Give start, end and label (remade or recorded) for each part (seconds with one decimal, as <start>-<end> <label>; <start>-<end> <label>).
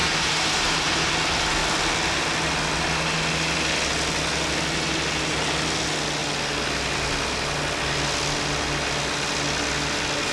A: 0.0-1.1 remade; 1.1-10.3 recorded